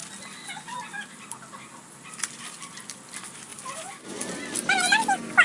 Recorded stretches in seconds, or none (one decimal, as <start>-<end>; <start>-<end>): 0.0-5.4